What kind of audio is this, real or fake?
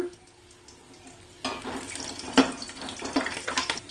real